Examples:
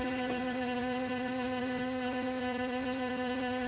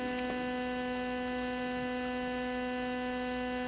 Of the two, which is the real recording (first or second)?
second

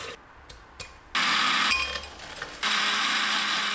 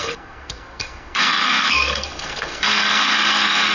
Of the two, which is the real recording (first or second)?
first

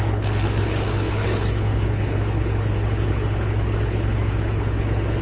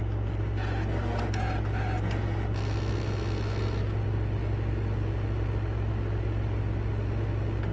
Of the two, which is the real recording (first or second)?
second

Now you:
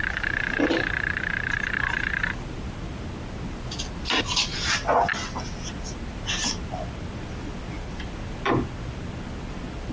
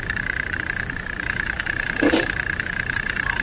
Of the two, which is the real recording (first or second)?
first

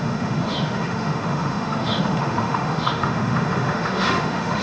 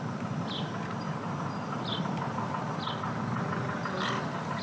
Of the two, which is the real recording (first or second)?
second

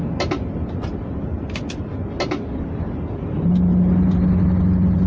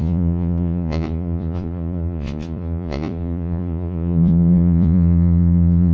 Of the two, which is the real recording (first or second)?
first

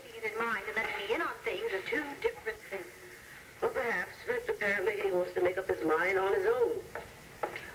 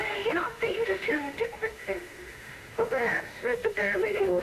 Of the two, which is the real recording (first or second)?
first